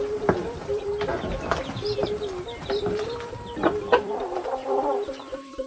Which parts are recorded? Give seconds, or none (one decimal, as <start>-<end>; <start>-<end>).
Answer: 0.9-2.6